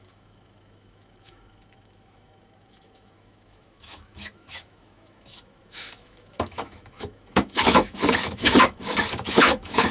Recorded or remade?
remade